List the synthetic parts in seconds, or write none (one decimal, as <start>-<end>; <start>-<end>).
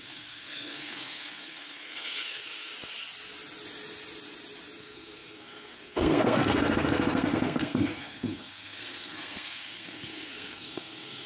0.0-2.7; 4.8-11.3